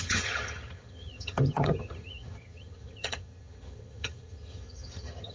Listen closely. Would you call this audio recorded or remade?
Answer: remade